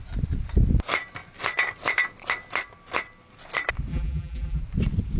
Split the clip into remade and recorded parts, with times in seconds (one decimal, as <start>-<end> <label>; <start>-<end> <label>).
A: 0.0-3.9 recorded; 3.9-4.6 remade; 4.6-5.2 recorded